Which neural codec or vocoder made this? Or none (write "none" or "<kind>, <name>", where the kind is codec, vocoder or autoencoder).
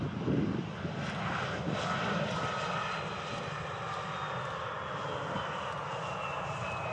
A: none